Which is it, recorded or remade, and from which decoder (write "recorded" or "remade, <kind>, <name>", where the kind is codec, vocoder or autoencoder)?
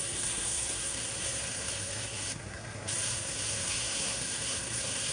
remade, codec, SNAC